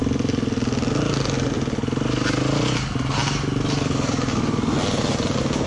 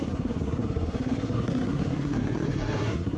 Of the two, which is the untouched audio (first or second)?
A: first